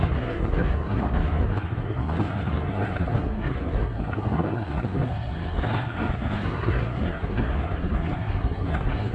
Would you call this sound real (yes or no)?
no